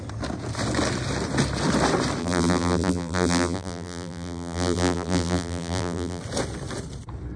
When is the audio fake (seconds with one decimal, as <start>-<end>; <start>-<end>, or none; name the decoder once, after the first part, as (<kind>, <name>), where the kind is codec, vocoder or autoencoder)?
2.2-6.2 (vocoder, BigVGAN v2)